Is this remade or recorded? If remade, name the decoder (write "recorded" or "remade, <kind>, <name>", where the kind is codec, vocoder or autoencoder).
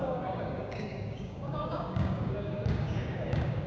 remade, codec, DAC